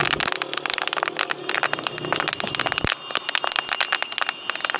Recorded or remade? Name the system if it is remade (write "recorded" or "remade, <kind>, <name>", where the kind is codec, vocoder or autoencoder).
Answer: recorded